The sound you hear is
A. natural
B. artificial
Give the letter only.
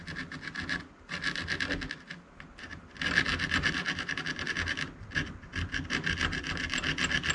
A